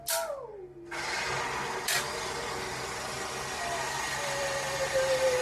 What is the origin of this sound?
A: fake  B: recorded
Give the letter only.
B